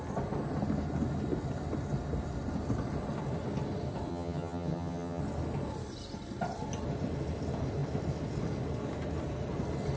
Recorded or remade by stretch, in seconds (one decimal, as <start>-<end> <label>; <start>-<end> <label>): 0.0-4.1 recorded; 4.1-5.2 remade; 5.2-10.0 recorded